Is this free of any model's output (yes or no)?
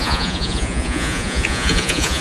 no